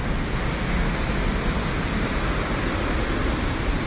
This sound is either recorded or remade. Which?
recorded